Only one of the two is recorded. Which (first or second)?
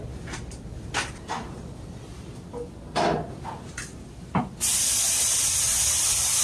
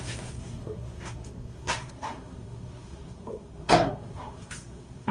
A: first